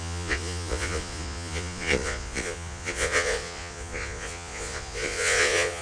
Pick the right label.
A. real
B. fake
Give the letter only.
B